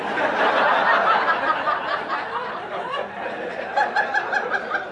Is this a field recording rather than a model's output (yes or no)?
yes